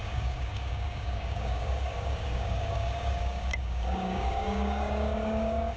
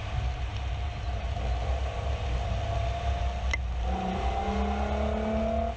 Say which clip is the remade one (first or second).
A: first